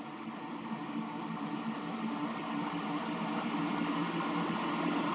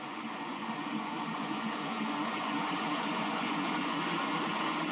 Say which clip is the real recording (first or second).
first